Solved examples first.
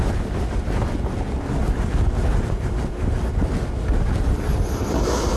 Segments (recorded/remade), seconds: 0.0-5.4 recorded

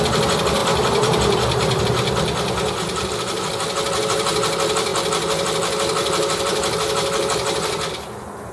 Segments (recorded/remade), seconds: 0.0-0.6 recorded; 0.6-1.8 remade; 1.8-8.5 recorded

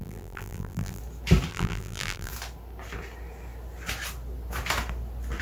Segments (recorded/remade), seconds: 0.0-1.0 remade; 1.0-1.5 recorded; 1.5-2.3 remade; 2.3-5.4 recorded